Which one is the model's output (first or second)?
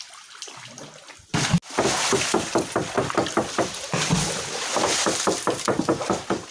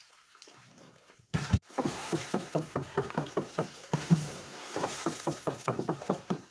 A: second